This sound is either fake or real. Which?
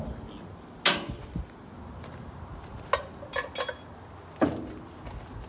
real